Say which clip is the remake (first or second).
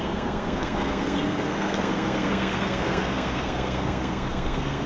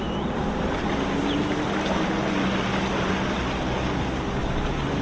first